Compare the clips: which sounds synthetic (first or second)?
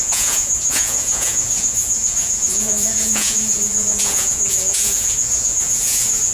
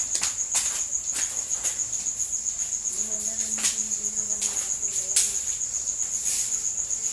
first